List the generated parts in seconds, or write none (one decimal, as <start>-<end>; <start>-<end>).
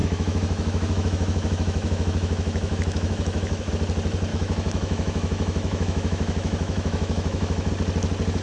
0.0-3.7; 4.3-7.7